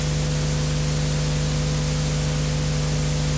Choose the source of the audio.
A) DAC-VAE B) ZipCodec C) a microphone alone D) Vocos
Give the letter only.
C